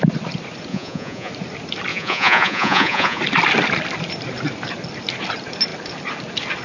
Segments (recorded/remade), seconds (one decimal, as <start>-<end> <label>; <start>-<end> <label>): 0.0-0.7 recorded; 0.7-1.3 remade; 1.3-1.9 recorded; 1.9-3.2 remade; 3.2-6.6 recorded

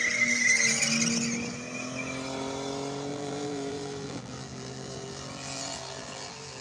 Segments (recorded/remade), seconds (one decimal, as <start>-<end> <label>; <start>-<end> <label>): 0.0-3.1 recorded; 3.1-6.6 remade

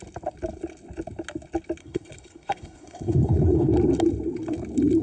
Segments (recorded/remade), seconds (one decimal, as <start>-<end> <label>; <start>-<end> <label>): 0.0-1.8 recorded; 1.8-3.7 remade; 3.7-5.0 recorded

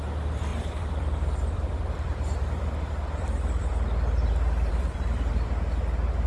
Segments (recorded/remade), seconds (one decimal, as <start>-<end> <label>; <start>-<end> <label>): 0.0-0.5 recorded; 0.5-4.3 remade; 4.3-4.7 recorded; 4.7-5.3 remade; 5.3-6.3 recorded

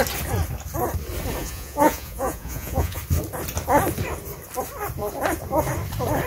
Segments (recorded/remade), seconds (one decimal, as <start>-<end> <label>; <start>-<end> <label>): 0.0-1.4 recorded; 1.4-3.0 remade; 3.0-6.3 recorded

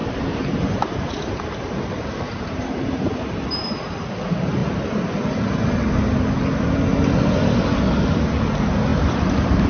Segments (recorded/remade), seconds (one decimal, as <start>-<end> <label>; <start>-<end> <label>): 0.0-3.1 remade; 3.1-8.9 recorded; 8.9-9.7 remade